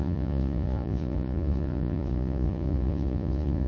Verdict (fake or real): fake